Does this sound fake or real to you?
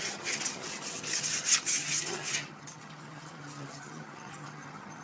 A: fake